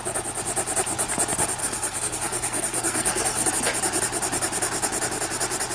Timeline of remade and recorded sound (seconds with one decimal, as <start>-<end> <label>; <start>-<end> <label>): 0.0-1.6 recorded; 1.6-3.5 remade; 3.5-5.7 recorded